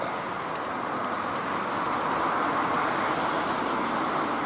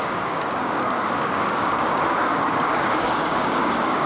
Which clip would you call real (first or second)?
first